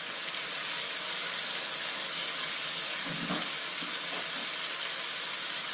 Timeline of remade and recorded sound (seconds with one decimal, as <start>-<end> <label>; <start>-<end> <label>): 0.0-0.6 recorded; 0.6-4.0 remade; 4.0-5.7 recorded